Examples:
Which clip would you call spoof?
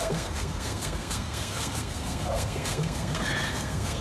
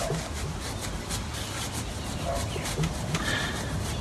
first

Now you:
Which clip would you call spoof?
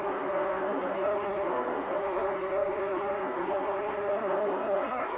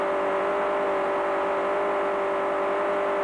first